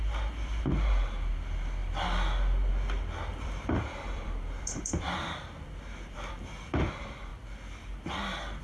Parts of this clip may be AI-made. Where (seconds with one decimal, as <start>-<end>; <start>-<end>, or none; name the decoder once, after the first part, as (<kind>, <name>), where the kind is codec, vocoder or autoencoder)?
3.3-6.5 (vocoder, BigVGAN v2)